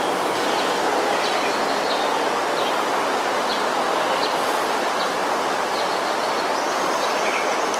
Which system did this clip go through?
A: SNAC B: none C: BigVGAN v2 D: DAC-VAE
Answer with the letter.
B